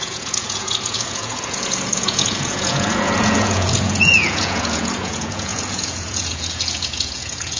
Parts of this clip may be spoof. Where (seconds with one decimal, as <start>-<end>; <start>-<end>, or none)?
0.0-7.6